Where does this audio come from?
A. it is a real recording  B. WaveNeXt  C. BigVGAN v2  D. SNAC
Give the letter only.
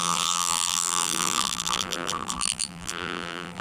C